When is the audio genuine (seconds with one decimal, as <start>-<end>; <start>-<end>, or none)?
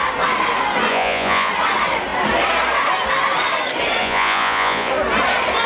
0.0-0.9; 1.5-4.0; 4.9-5.7